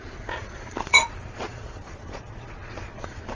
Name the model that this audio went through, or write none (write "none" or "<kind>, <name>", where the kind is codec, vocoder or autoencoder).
vocoder, Vocos